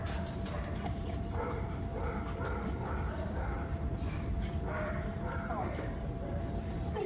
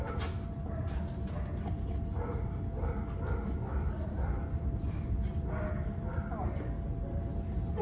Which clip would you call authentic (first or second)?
second